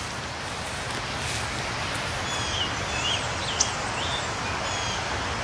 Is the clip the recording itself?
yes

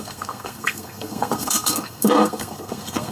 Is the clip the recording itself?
no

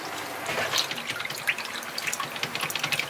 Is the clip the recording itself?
yes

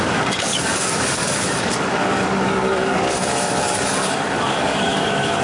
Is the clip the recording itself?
no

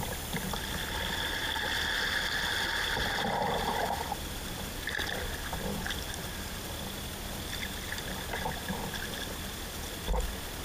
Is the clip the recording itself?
yes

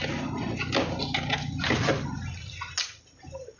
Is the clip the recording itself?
yes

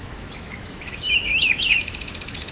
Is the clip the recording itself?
no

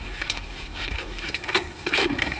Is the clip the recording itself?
no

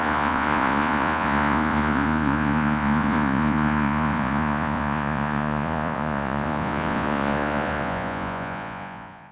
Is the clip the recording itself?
no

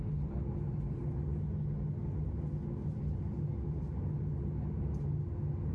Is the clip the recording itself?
yes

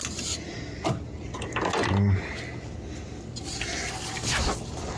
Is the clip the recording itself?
yes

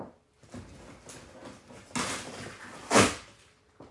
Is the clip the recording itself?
yes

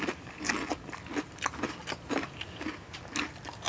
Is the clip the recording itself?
yes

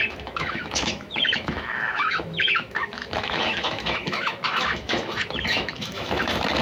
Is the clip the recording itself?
no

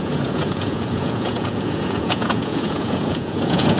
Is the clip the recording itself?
no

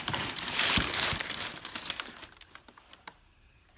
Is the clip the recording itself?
no